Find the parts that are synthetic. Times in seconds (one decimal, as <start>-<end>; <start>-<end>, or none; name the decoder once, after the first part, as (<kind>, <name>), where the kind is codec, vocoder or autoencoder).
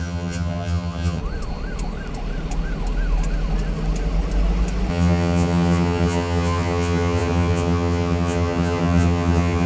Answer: 0.0-1.2 (vocoder, HiFi-GAN); 4.9-9.7